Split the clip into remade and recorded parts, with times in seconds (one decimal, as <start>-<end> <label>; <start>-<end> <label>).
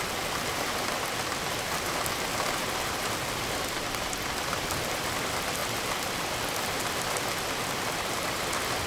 0.0-8.9 recorded